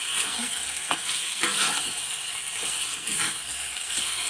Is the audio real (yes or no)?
no